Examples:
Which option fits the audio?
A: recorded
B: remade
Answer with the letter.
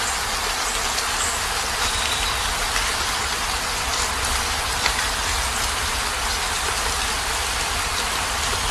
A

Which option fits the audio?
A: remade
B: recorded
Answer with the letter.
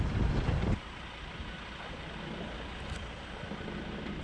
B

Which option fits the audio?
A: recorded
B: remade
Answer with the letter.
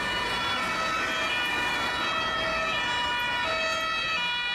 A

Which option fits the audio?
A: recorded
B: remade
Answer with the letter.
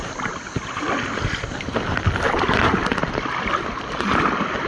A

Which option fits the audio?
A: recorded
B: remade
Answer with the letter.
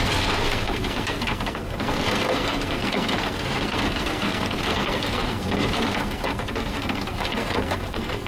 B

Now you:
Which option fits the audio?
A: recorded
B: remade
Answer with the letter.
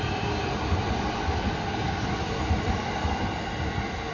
A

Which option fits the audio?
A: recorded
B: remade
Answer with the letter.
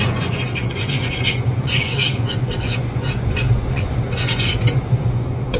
B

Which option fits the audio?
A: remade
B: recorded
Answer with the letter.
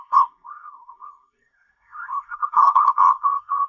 A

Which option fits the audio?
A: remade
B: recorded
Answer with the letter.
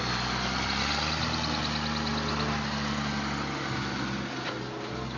B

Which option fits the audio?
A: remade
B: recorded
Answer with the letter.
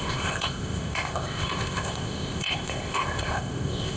A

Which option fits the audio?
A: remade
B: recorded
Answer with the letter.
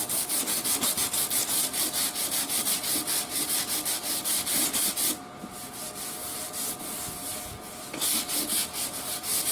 A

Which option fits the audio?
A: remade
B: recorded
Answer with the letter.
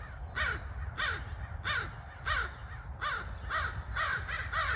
B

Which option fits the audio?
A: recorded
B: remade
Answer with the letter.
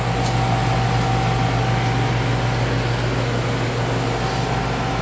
A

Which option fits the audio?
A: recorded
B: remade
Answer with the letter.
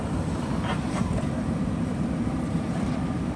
B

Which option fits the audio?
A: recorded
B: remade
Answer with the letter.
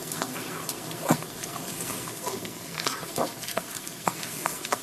B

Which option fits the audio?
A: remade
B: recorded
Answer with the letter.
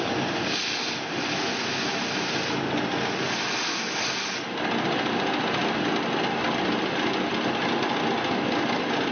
B